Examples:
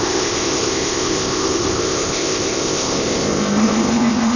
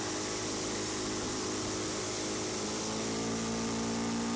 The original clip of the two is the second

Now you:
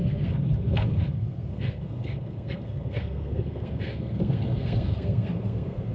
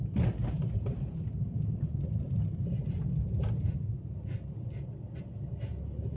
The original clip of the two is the second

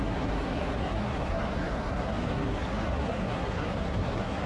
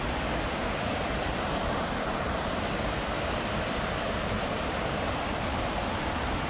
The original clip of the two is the second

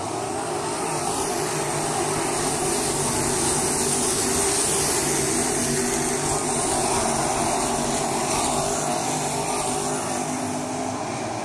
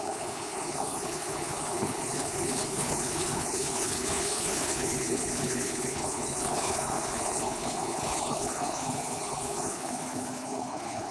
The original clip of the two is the first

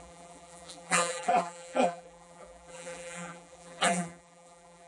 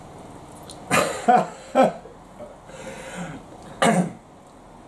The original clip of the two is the second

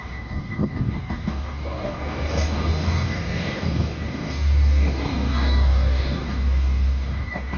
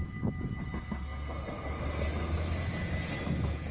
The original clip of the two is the second